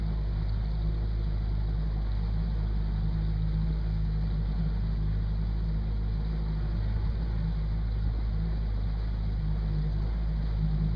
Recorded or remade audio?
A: recorded